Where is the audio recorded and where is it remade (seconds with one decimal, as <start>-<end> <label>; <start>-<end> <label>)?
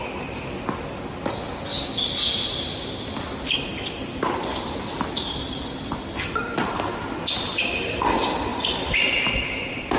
0.0-4.1 recorded; 4.1-7.6 remade; 7.6-10.0 recorded